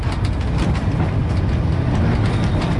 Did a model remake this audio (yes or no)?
no